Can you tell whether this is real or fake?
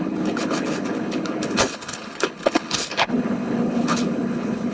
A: fake